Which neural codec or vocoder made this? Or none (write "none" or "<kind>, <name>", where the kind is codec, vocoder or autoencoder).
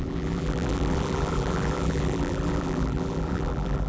vocoder, BigVGAN v2